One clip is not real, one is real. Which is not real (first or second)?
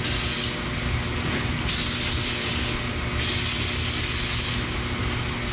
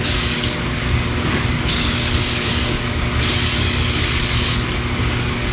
second